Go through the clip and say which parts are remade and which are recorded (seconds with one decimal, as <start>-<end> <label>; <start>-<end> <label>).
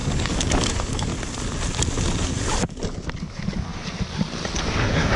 0.0-1.1 remade; 1.1-3.2 recorded; 3.2-3.7 remade; 3.7-4.5 recorded; 4.5-5.2 remade